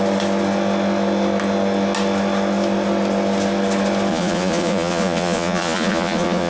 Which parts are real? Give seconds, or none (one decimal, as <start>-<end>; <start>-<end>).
0.0-4.1